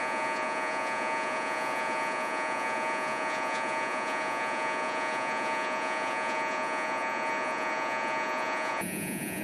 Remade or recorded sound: remade